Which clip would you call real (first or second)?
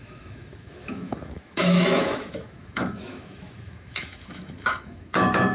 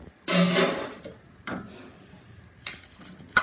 second